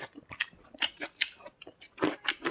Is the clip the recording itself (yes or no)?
no